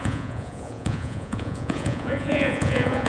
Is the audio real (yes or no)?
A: no